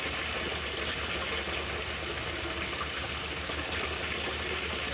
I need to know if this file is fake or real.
real